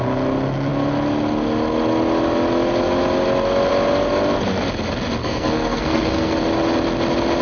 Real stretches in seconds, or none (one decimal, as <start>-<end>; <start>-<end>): 0.0-5.2; 6.4-7.4